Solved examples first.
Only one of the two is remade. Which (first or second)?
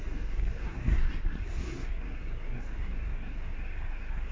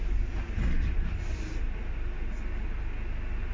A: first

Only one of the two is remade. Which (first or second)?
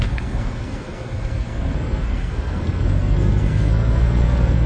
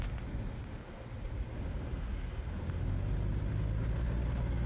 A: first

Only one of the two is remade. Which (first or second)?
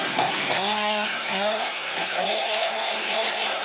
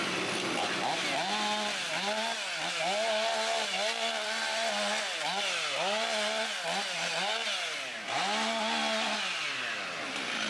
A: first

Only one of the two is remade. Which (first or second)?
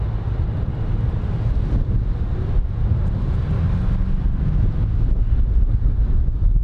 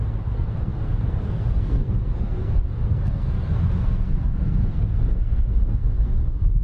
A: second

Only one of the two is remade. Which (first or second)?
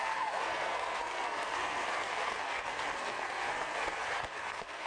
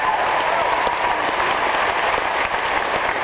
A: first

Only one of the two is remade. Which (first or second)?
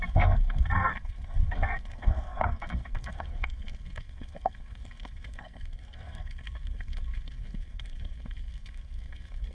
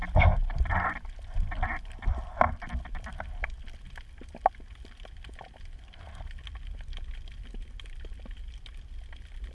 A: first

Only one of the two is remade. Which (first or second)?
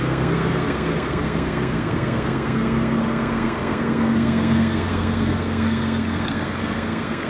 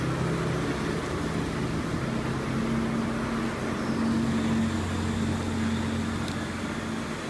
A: first